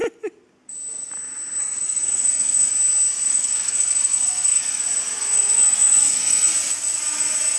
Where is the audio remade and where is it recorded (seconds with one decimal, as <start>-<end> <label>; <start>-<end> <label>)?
0.0-1.6 recorded; 1.6-2.7 remade; 2.7-3.3 recorded; 3.3-4.8 remade; 4.8-5.2 recorded; 5.2-6.5 remade; 6.5-7.6 recorded